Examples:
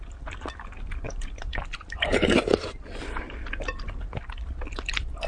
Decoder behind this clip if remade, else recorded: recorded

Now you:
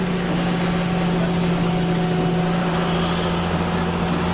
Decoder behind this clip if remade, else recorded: recorded